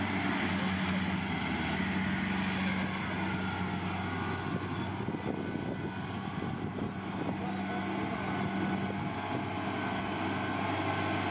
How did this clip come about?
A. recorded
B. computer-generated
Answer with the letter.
A